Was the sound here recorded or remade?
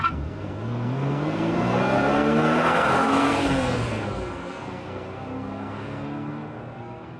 remade